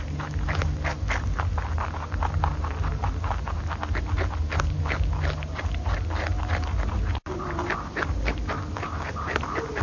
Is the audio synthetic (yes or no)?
no